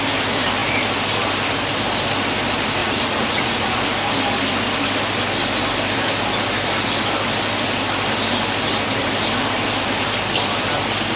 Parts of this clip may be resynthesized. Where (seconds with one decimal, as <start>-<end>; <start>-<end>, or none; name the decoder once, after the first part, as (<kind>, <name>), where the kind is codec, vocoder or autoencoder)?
2.8-3.8 (vocoder, Vocos)